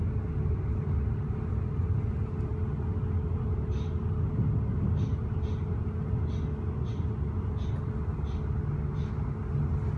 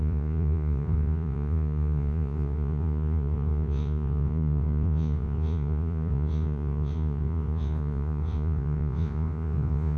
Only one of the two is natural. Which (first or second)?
first